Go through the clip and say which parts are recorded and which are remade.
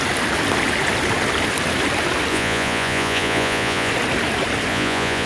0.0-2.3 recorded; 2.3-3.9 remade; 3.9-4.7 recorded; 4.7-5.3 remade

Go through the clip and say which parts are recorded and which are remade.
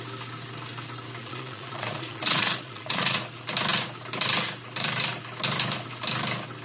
0.0-1.2 recorded; 1.2-3.2 remade; 3.2-6.6 recorded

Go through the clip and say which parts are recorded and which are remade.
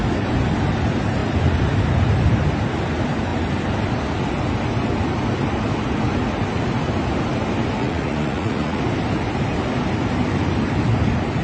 0.0-7.8 recorded; 7.8-8.8 remade; 8.8-11.4 recorded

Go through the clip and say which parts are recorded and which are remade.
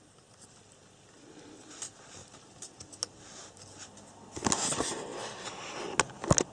0.0-6.5 recorded